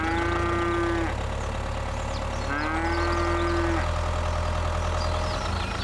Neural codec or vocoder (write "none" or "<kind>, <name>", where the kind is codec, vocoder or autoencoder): none